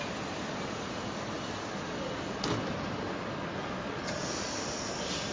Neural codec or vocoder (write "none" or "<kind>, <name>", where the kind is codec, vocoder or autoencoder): none